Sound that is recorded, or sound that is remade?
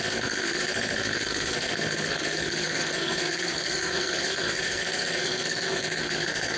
remade